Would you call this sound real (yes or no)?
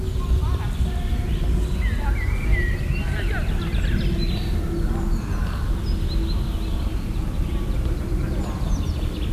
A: yes